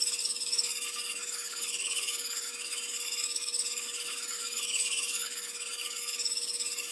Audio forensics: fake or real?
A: fake